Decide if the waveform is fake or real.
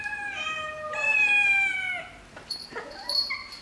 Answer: real